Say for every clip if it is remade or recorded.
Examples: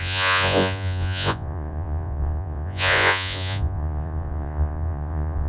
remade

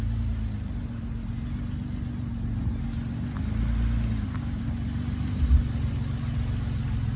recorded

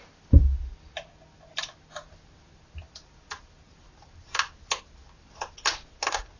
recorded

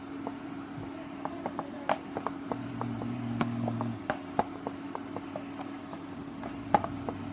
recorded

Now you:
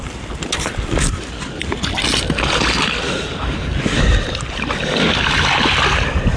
recorded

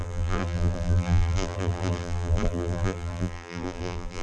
remade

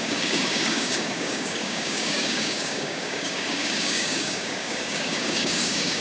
remade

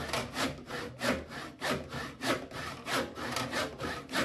recorded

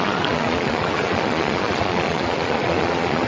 remade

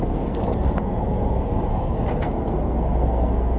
remade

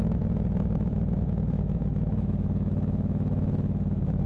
remade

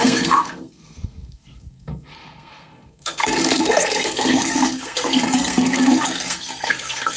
remade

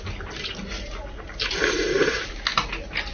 recorded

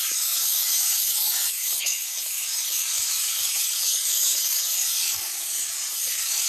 remade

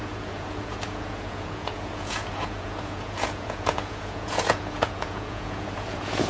remade